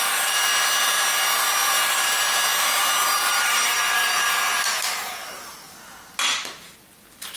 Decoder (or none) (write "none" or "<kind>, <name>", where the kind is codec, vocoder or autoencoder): none